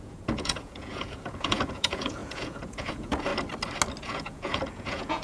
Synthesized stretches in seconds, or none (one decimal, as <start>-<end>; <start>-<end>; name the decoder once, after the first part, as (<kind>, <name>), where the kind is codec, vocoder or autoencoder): 0.0-3.3 (vocoder, Vocos); 4.0-5.2